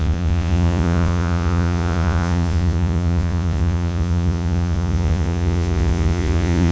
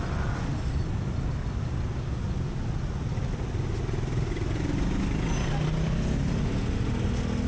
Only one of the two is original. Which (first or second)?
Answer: second